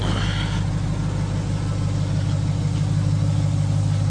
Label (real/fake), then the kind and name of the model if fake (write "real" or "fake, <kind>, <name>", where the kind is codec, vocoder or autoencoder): real